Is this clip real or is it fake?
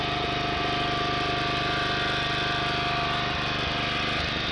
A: real